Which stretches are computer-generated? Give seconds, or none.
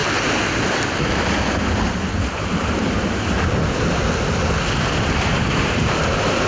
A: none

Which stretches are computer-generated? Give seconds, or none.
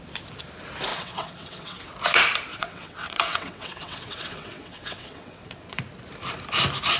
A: 0.9-1.8 (vocoder, WaveNeXt); 2.5-5.8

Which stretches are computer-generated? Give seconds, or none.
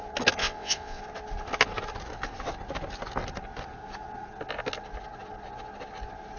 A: 0.4-1.0 (vocoder, WaveNeXt)